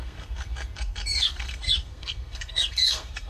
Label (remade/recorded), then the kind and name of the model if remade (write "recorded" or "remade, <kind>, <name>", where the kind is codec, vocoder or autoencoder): remade, codec, SNAC